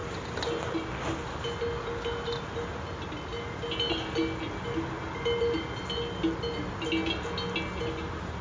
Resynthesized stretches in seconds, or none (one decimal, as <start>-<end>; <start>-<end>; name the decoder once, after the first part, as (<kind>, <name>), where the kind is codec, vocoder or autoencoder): none